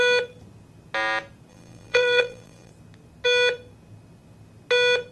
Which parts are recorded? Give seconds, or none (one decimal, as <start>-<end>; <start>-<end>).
0.0-1.5; 2.7-5.1